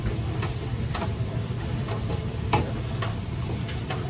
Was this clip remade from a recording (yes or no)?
no